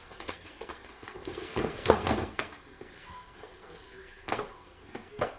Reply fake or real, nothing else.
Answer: fake